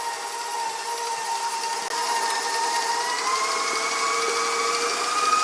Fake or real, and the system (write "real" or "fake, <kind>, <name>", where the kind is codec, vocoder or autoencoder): real